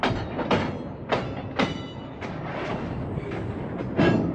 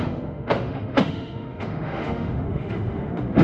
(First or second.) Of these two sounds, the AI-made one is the second